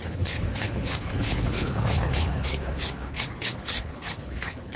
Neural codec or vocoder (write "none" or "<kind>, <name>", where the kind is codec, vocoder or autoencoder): codec, HILCodec